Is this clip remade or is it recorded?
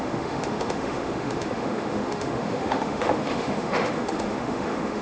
remade